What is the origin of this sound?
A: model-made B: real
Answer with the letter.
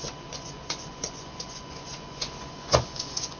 A